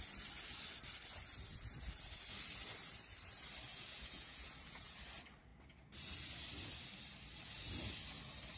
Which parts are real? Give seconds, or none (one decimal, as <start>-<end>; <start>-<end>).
0.0-3.7; 5.0-8.6